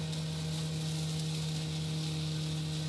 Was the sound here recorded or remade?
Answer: recorded